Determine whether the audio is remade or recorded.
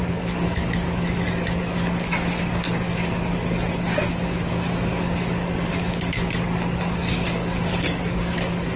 remade